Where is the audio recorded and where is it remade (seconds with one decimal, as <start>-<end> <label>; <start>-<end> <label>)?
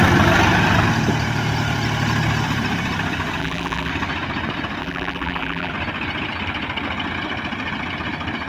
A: 0.0-3.4 recorded; 3.4-3.9 remade; 3.9-4.8 recorded; 4.8-5.7 remade; 5.7-8.5 recorded